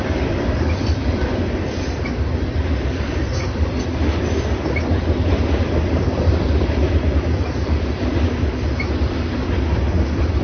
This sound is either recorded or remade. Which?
remade